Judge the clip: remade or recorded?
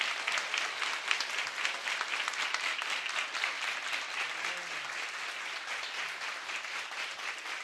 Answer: recorded